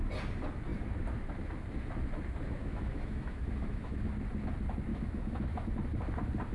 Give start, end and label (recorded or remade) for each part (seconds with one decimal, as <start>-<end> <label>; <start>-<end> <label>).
0.0-2.6 recorded; 2.6-4.1 remade; 4.1-4.9 recorded; 4.9-5.7 remade; 5.7-6.5 recorded